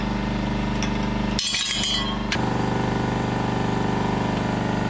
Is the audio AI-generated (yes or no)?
no